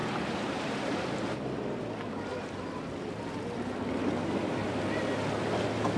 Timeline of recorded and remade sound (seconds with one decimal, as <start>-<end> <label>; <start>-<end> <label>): 0.0-1.6 remade; 1.6-6.0 recorded